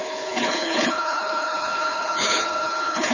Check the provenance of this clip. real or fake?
fake